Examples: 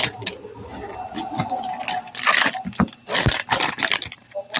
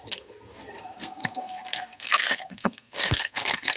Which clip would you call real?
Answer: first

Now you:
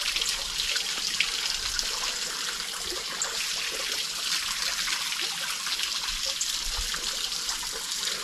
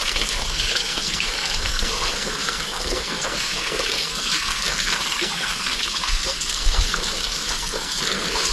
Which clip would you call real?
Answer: first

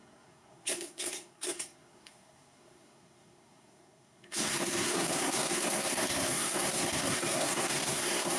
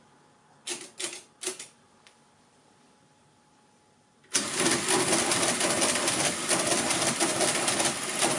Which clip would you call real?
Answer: second